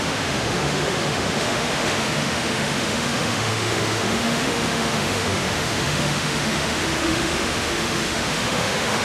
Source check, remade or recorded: remade